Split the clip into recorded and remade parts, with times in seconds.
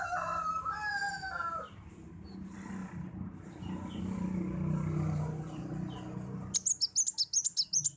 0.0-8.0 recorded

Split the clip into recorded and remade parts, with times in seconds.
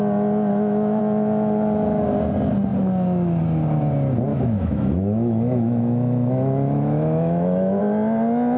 0.0-0.5 recorded; 0.5-1.0 remade; 1.0-4.3 recorded; 4.3-7.8 remade; 7.8-8.6 recorded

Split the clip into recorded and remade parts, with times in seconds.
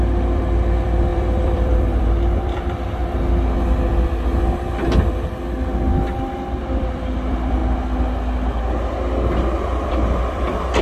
0.0-3.0 remade; 3.0-6.6 recorded; 6.6-7.6 remade; 7.6-9.6 recorded; 9.6-10.8 remade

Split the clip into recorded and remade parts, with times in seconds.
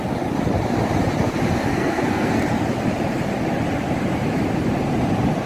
0.0-1.7 recorded; 1.7-2.4 remade; 2.4-5.5 recorded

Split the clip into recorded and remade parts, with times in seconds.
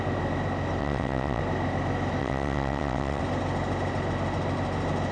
0.0-0.8 recorded; 0.8-1.4 remade; 1.4-2.2 recorded; 2.2-3.2 remade; 3.2-5.1 recorded